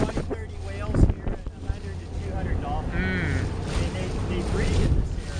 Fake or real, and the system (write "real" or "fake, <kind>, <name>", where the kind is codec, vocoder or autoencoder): real